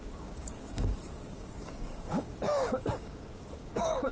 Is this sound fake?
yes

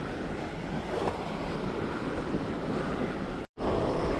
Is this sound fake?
yes